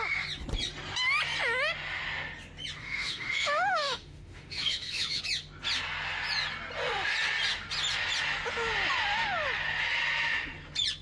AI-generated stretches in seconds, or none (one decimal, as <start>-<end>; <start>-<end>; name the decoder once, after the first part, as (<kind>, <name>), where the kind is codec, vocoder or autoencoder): 2.8-5.2 (autoencoder, DAC-VAE)